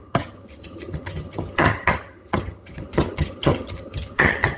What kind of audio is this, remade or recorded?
remade